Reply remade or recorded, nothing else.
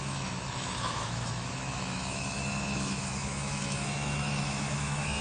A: remade